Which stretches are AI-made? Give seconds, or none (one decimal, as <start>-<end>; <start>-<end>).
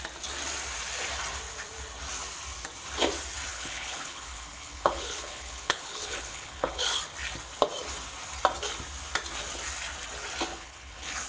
3.5-7.0; 10.5-11.3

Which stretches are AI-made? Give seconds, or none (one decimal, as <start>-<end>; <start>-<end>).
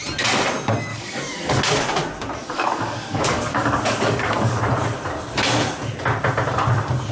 0.9-1.6; 2.4-4.6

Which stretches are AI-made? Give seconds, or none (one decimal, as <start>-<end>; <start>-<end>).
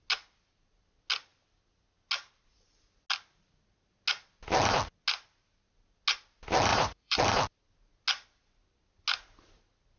6.7-7.2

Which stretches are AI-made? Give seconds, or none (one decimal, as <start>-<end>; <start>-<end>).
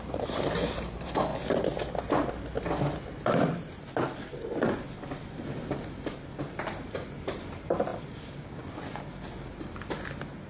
0.0-1.3; 5.9-10.5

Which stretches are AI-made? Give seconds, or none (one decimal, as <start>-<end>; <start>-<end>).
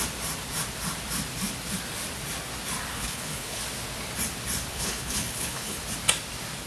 2.9-3.6; 4.7-5.8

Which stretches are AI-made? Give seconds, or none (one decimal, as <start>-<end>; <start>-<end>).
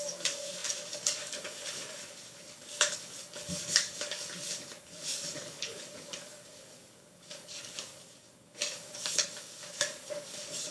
0.0-10.7